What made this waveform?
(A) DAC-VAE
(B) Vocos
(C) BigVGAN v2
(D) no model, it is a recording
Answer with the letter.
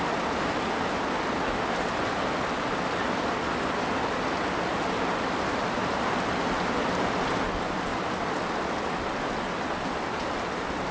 D